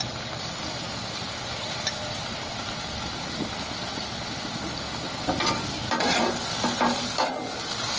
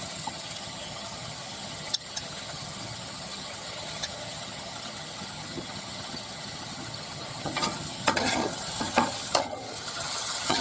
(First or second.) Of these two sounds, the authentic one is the first